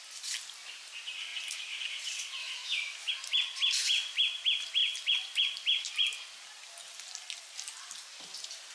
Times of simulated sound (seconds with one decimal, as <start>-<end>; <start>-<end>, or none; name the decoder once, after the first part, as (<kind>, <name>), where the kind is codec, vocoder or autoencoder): 2.4-3.1 (autoencoder, DAC-VAE)